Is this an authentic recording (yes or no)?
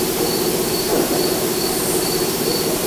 no